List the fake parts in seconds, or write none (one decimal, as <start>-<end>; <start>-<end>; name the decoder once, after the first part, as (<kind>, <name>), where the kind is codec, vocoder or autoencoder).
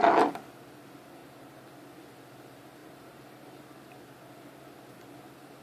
1.2-1.7 (vocoder, BigVGAN v2); 2.8-3.6